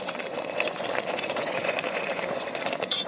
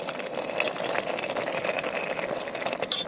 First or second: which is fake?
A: first